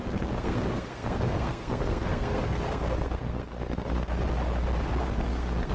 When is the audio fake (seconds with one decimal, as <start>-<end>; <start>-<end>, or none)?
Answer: 0.0-4.1; 5.0-5.7